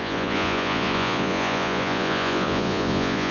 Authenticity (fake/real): fake